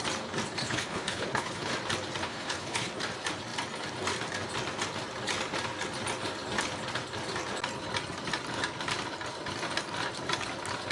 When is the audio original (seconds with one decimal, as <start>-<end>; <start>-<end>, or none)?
0.0-0.6; 1.7-2.2; 2.9-10.9